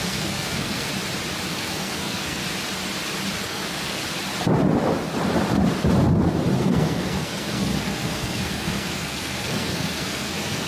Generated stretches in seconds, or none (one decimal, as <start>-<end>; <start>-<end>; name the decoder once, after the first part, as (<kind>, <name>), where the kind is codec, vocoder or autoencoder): 0.0-0.9 (codec, SNAC); 1.5-2.4; 3.4-4.0; 6.6-10.7